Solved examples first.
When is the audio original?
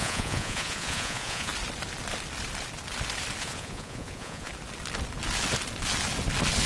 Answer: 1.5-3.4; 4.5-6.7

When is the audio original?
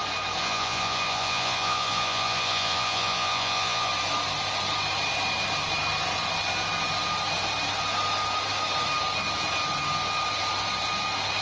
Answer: 0.0-0.4; 3.9-11.4